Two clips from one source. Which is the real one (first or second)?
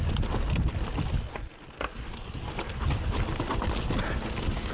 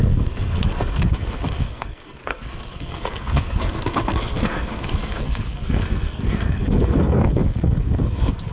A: first